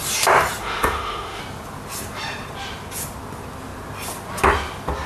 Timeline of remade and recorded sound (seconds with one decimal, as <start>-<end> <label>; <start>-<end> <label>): 0.0-0.6 recorded; 0.6-1.4 remade; 1.4-5.1 recorded